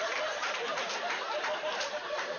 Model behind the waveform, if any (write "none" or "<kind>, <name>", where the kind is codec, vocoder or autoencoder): none